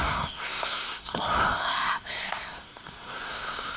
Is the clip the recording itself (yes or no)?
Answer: no